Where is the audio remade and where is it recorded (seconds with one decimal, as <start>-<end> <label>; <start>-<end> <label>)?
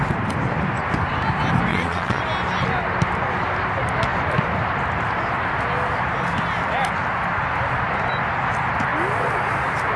0.0-1.7 recorded; 1.7-2.2 remade; 2.2-10.0 recorded